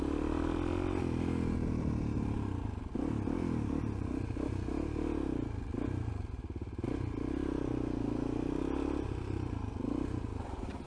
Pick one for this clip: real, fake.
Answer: real